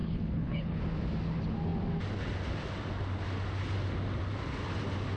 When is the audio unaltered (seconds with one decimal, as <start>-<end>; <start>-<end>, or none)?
0.8-5.2

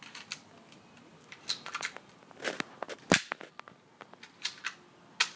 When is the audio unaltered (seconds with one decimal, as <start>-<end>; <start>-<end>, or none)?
0.0-5.4

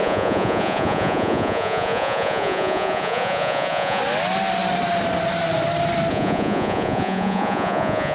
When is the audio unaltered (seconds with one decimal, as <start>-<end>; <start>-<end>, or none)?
4.0-6.1

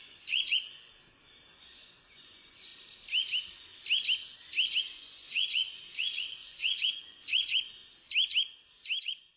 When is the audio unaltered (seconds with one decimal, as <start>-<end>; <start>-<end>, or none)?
0.9-1.6; 2.7-4.8; 7.8-9.0

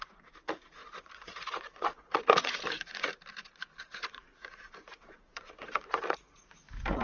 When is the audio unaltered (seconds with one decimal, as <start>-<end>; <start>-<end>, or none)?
3.1-3.8

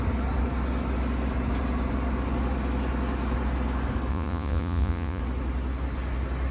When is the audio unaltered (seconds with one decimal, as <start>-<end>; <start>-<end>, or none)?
0.0-4.1; 5.2-6.5

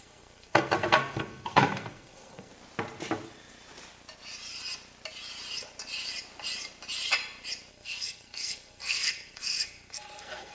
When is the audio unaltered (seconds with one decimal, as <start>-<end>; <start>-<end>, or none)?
2.5-7.7

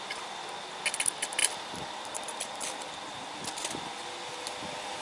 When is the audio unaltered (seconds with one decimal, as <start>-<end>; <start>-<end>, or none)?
0.0-1.4; 2.9-4.3